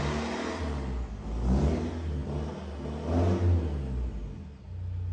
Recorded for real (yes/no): yes